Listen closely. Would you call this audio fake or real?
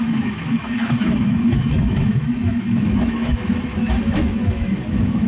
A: fake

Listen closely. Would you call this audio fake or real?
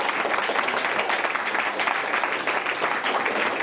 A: real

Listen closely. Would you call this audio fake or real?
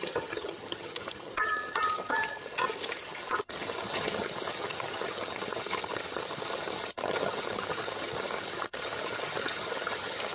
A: fake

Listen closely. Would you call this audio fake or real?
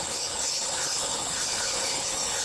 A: fake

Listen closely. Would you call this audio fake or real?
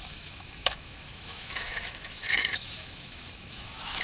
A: fake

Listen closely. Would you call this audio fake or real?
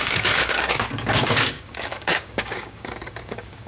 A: fake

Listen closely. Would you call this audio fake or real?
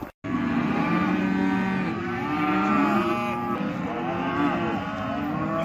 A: real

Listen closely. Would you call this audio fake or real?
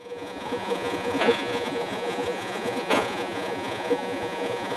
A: fake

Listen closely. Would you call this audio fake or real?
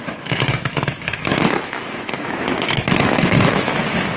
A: fake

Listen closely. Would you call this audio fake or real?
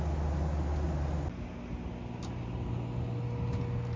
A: real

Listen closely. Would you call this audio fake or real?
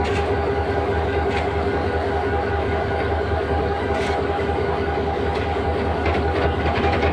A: fake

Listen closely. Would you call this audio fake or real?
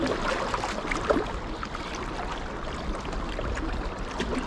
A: real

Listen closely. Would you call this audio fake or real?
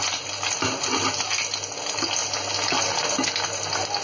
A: real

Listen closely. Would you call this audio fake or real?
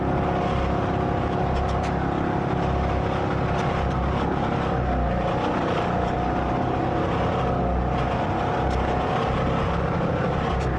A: real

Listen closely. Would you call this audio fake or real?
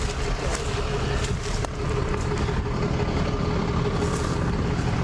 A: real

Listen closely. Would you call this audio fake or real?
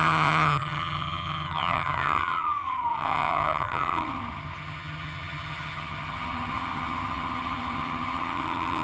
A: fake